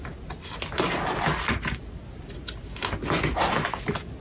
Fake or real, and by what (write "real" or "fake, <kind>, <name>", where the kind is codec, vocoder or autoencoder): real